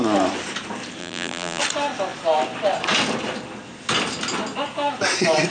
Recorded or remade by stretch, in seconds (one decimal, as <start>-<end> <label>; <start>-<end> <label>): 0.0-1.0 recorded; 1.0-1.6 remade; 1.6-5.5 recorded